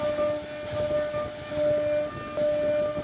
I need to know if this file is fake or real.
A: real